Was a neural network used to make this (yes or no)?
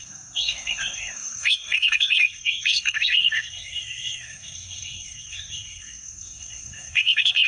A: yes